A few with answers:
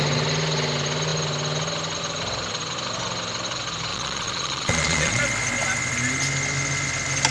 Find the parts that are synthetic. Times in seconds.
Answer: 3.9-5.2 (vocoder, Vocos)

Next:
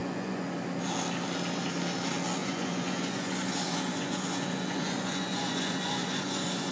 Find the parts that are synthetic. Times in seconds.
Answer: 0.0-0.5 (vocoder, Vocos); 2.4-6.7

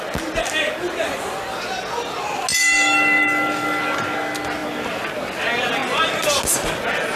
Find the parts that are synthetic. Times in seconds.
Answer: 2.5-3.8 (codec, DAC)

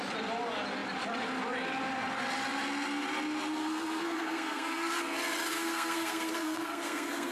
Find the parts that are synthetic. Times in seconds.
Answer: 3.6-5.0 (codec, SNAC); 5.5-7.3